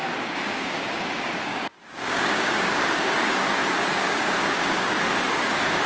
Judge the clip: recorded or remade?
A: remade